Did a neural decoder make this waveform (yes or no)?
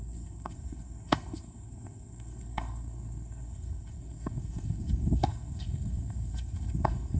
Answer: yes